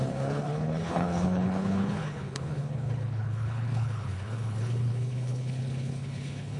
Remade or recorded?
remade